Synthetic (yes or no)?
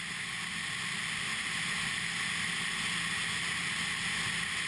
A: no